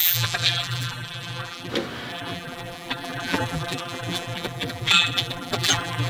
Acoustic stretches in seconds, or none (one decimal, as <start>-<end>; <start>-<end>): 1.7-2.1